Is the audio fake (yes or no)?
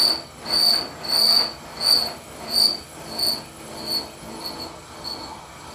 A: no